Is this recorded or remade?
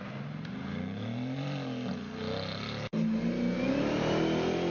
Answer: recorded